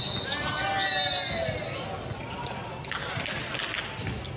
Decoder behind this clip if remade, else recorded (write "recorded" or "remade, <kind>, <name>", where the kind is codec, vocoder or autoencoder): recorded